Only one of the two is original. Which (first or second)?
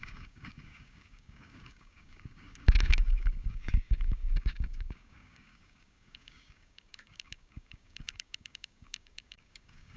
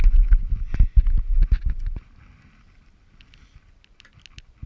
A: second